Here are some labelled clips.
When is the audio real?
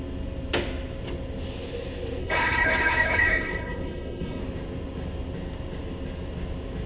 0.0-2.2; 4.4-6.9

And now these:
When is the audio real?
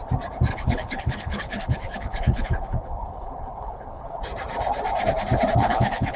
0.0-0.5; 4.2-5.6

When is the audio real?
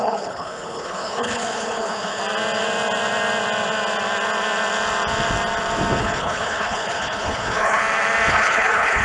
2.2-6.0; 7.8-8.3